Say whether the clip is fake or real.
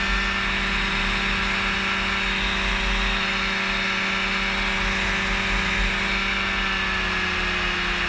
real